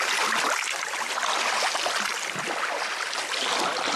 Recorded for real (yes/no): no